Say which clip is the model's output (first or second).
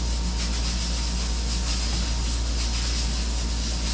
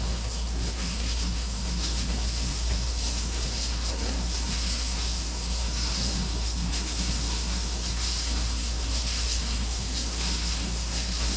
second